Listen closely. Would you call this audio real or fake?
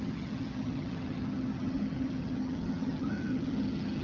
fake